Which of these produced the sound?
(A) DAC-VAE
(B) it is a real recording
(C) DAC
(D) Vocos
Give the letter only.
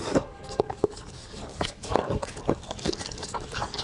C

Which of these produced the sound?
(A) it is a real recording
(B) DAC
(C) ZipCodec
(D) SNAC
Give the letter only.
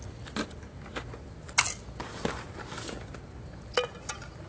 A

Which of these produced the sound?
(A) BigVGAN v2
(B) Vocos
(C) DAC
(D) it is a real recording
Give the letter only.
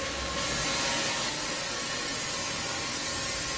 D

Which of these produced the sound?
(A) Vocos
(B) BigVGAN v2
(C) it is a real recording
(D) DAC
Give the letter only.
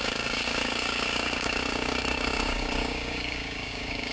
D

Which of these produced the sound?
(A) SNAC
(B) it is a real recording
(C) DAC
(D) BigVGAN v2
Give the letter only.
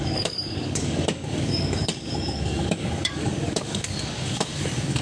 C